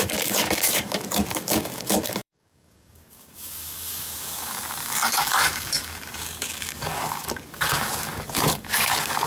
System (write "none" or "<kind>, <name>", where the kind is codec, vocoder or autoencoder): codec, DAC